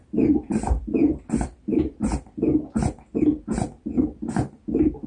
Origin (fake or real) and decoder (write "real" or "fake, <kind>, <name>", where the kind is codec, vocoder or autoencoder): real